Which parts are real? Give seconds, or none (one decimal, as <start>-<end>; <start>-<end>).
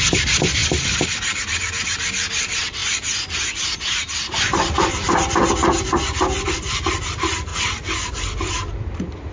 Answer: 2.8-4.1; 5.6-6.2; 7.5-8.1